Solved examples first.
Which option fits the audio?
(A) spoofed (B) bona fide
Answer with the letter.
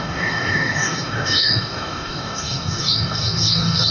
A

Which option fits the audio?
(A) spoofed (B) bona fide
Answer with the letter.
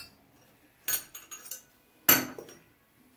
B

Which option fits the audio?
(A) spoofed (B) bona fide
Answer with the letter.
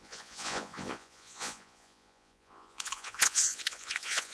A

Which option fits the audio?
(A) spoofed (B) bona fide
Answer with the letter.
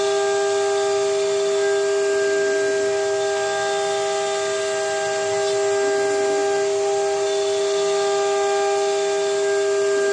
B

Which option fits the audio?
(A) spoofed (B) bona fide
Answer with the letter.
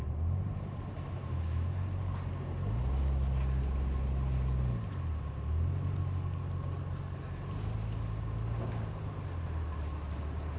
B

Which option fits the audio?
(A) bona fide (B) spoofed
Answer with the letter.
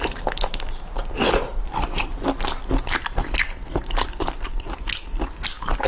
A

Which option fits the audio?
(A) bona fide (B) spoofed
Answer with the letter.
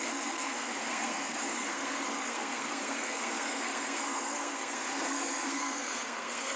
B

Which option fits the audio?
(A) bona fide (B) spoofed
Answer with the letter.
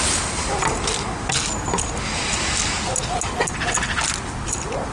A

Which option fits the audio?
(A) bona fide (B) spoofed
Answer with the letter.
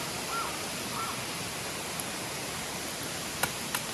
A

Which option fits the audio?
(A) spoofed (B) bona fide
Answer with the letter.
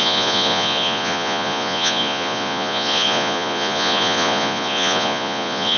A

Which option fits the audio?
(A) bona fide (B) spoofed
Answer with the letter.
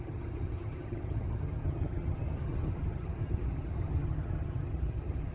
B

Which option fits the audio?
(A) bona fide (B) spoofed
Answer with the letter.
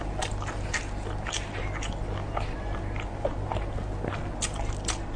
A